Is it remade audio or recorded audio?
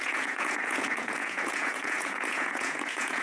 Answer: remade